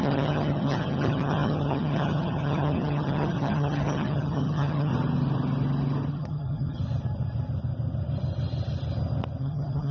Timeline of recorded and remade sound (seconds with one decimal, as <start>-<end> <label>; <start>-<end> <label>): 0.0-4.9 remade; 4.9-6.1 recorded; 6.1-6.8 remade; 6.8-9.4 recorded; 9.4-9.9 remade

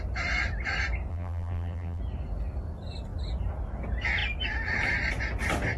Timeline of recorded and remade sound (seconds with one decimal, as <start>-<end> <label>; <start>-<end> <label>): 0.0-1.1 recorded; 1.1-2.0 remade; 2.0-5.8 recorded

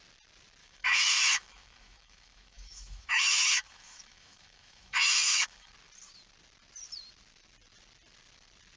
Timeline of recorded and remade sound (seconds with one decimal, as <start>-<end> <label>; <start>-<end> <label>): 0.0-0.6 recorded; 0.6-5.7 remade; 5.7-8.8 recorded

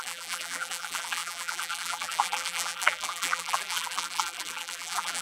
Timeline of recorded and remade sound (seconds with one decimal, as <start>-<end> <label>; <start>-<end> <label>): 0.0-5.2 remade

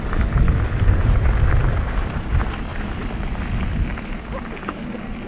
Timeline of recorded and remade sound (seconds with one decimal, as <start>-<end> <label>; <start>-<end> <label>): 0.0-5.3 recorded

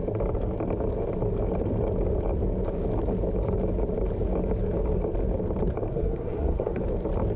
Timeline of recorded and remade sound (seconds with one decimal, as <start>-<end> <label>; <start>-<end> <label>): 0.0-5.9 recorded; 5.9-6.8 remade; 6.8-7.4 recorded